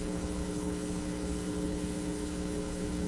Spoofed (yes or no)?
yes